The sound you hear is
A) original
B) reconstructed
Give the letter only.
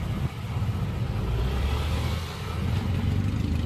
A